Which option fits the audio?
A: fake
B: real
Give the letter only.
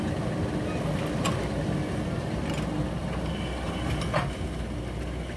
B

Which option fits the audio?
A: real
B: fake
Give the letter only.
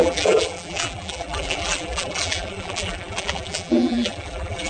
B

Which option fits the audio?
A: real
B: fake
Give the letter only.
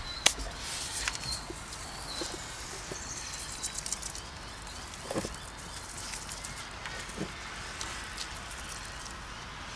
A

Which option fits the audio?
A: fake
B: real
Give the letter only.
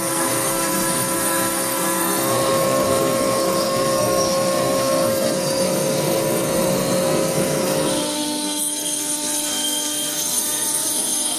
A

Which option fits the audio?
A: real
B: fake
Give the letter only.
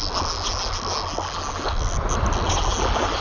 A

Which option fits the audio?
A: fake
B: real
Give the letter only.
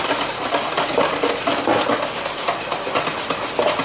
B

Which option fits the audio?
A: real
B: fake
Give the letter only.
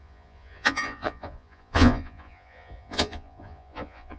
B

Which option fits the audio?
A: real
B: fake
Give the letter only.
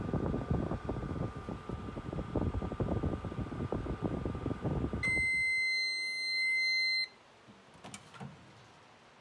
A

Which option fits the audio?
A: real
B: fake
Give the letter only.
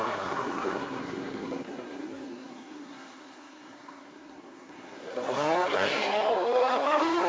B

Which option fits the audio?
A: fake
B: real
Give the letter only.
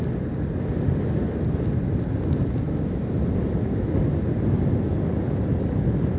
B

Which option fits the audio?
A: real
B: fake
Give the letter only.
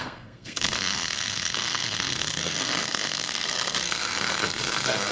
B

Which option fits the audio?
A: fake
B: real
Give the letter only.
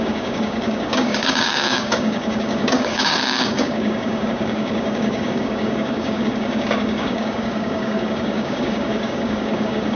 A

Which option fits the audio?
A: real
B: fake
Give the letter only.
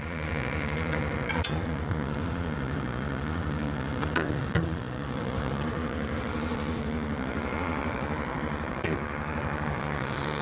B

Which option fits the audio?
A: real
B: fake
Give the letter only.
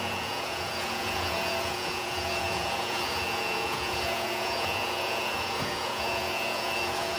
B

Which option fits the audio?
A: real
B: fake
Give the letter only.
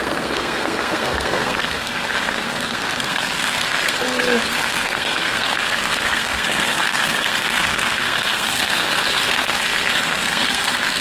B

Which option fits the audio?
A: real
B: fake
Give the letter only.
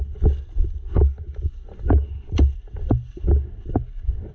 A